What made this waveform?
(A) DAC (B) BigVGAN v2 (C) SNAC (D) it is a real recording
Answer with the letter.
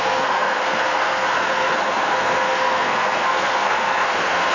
C